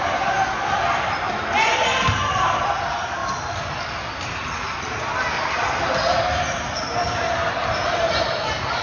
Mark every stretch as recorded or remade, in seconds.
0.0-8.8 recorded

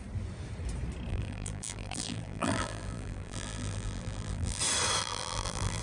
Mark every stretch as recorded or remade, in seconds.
0.0-1.1 recorded; 1.1-4.6 remade; 4.6-5.0 recorded; 5.0-5.8 remade

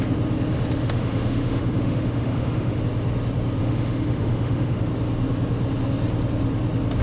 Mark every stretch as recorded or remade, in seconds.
0.0-0.8 recorded; 0.8-2.8 remade; 2.8-3.6 recorded; 3.6-4.8 remade; 4.8-7.0 recorded

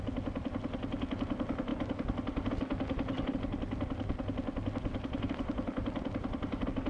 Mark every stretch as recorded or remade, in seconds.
0.0-6.9 recorded

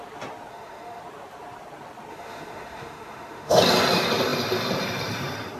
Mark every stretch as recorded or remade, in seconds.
0.0-0.5 recorded; 0.5-1.0 remade; 1.0-2.1 recorded; 2.1-3.6 remade; 3.6-5.6 recorded